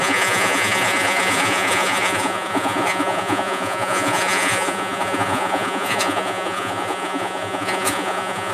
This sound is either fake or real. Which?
fake